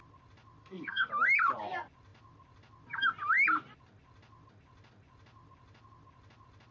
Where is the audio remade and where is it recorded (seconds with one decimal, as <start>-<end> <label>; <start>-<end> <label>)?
0.0-0.6 recorded; 0.6-1.1 remade; 1.1-6.7 recorded

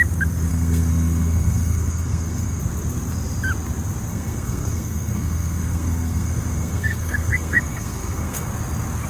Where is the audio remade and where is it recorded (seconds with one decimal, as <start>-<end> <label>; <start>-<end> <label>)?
0.0-0.5 recorded; 0.5-2.6 remade; 2.6-4.1 recorded; 4.1-8.5 remade; 8.5-9.1 recorded